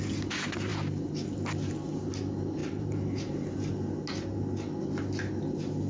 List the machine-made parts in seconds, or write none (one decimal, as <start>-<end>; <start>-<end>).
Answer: 2.6-3.7